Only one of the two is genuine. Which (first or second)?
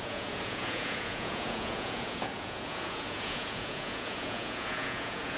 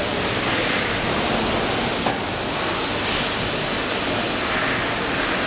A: second